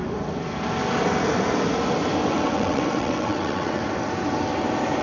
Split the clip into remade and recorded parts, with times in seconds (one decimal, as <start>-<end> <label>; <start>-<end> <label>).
0.0-2.3 recorded; 2.3-3.8 remade; 3.8-5.0 recorded

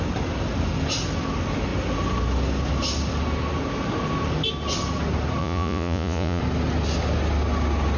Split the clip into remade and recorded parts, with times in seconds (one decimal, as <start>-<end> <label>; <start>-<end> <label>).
0.0-5.4 recorded; 5.4-6.4 remade; 6.4-8.0 recorded

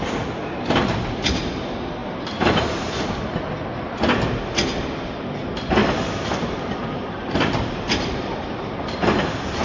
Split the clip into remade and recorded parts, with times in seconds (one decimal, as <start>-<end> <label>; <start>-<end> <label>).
0.0-5.8 recorded; 5.8-8.7 remade; 8.7-9.6 recorded

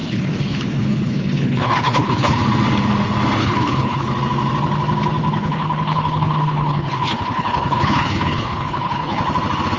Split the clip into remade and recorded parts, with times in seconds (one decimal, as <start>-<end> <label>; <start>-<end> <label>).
0.0-2.4 remade; 2.4-3.4 recorded; 3.4-4.1 remade; 4.1-5.4 recorded; 5.4-9.2 remade; 9.2-9.8 recorded

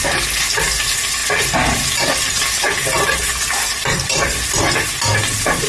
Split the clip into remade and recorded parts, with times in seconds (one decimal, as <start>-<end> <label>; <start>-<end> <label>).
0.0-5.7 recorded